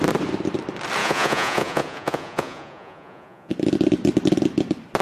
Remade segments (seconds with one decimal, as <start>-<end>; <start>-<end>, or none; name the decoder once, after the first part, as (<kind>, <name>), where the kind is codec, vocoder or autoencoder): 1.0-3.5 (vocoder, Vocos)